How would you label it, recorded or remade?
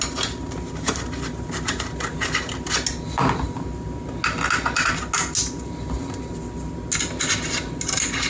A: recorded